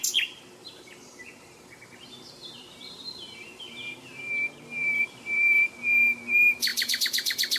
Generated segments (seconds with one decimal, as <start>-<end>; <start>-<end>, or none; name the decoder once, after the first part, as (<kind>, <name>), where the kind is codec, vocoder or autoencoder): 0.6-4.3 (vocoder, BigVGAN v2); 4.8-5.7; 6.7-7.6